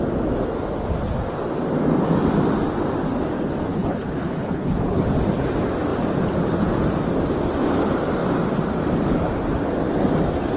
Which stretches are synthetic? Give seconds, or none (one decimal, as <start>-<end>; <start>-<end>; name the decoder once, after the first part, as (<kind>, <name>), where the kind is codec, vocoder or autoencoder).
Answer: 3.7-5.0 (codec, HILCodec)